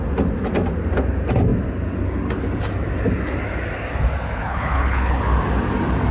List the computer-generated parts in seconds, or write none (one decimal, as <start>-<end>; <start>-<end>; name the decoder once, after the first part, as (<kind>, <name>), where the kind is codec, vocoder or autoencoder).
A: 4.4-5.2 (codec, HILCodec)